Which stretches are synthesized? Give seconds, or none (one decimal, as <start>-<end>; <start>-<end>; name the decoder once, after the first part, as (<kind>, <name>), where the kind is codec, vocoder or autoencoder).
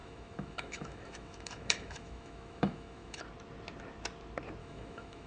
0.0-3.2 (autoencoder, DAC-VAE); 4.6-5.3